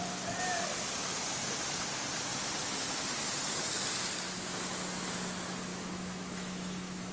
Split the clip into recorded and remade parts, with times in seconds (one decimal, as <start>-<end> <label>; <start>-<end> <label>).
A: 0.0-5.7 recorded; 5.7-7.1 remade